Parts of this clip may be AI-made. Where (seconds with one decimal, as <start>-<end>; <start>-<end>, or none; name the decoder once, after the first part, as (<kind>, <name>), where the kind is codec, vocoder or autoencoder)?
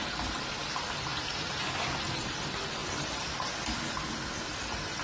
none